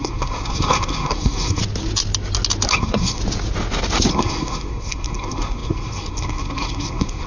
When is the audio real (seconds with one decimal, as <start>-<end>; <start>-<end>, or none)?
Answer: 1.6-2.7; 3.2-4.1